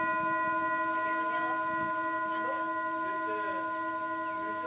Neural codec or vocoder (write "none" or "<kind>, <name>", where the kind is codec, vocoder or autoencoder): none